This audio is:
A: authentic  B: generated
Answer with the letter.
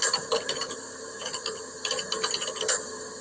A